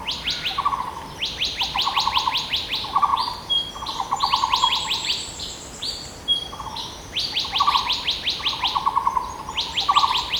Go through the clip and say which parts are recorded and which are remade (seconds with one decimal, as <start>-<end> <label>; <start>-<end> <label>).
0.0-10.4 recorded